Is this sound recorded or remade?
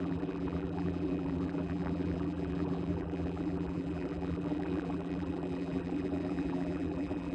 remade